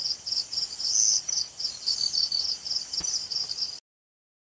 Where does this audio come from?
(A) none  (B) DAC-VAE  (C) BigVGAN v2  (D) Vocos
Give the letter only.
A